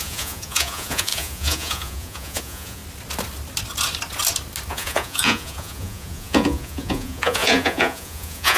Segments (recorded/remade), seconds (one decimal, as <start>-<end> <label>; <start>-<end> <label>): 0.0-2.8 remade; 2.8-4.7 recorded; 4.7-8.6 remade

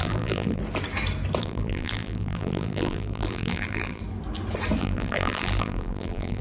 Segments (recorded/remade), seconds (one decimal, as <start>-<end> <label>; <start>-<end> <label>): 0.0-0.6 remade; 0.6-1.4 recorded; 1.4-4.0 remade; 4.0-4.8 recorded; 4.8-6.4 remade

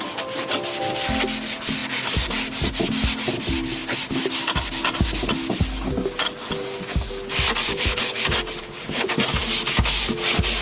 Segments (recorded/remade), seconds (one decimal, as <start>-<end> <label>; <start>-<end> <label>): 0.0-7.7 recorded; 7.7-8.2 remade; 8.2-8.6 recorded; 8.6-9.1 remade; 9.1-10.6 recorded

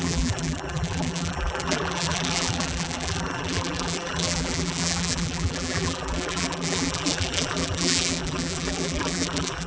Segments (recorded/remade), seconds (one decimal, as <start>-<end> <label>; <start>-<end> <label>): 0.0-9.7 remade

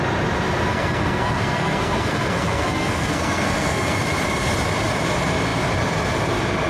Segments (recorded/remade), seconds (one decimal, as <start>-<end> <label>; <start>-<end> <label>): 0.0-0.7 recorded; 0.7-4.0 remade; 4.0-6.7 recorded

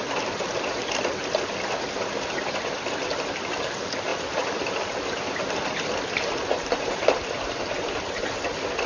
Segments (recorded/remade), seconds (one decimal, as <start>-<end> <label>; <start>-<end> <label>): 0.0-4.1 recorded; 4.1-6.2 remade; 6.2-8.9 recorded

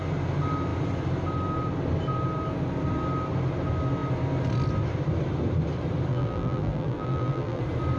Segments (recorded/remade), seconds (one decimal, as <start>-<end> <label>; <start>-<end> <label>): 0.0-6.1 recorded; 6.1-7.6 remade; 7.6-8.0 recorded